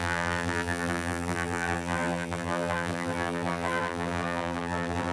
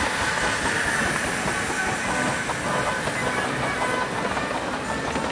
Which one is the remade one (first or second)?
first